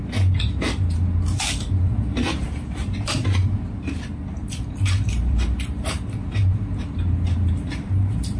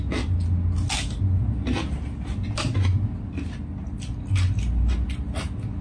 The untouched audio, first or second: second